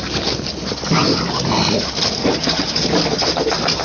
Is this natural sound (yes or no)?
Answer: yes